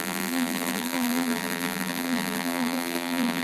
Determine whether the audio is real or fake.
fake